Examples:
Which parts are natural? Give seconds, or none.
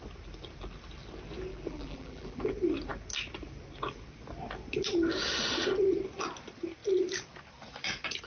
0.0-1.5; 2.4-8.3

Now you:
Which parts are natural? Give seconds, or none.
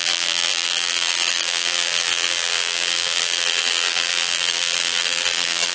none